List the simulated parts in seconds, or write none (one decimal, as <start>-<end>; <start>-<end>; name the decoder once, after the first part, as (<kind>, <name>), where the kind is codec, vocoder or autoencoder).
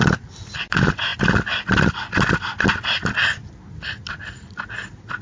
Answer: none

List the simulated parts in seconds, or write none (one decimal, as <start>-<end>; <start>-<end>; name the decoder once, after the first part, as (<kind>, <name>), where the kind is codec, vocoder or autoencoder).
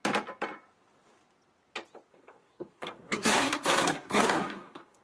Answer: 2.1-5.0 (codec, SNAC)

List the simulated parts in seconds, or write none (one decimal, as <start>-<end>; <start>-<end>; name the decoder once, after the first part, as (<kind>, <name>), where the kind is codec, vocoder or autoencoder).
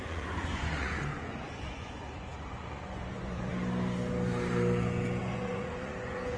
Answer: 0.0-3.5 (vocoder, Vocos); 5.2-6.4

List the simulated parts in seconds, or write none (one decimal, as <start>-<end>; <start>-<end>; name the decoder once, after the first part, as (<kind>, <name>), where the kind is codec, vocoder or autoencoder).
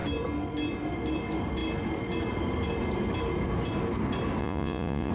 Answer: 4.4-5.1 (vocoder, Vocos)